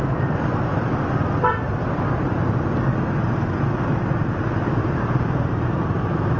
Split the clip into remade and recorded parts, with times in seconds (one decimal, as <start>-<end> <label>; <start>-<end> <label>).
0.0-4.8 recorded; 4.8-6.0 remade; 6.0-6.4 recorded